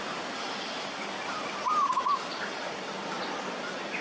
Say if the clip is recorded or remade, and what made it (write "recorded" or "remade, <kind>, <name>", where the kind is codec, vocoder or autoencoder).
recorded